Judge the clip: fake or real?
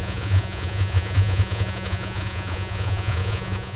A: fake